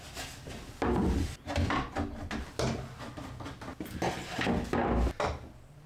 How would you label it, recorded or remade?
recorded